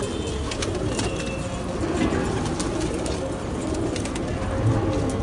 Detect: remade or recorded recorded